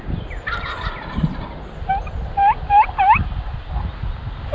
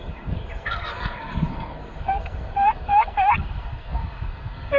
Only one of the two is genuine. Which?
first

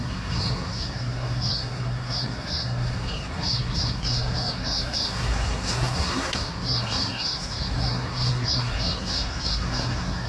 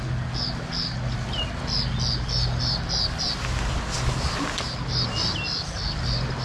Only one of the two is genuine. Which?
second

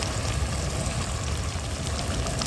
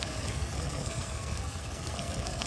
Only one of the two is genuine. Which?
first